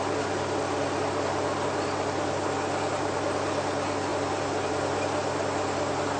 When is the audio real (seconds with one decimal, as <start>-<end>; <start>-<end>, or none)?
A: 0.0-6.2